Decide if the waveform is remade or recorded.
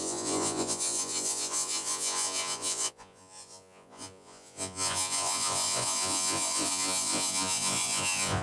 remade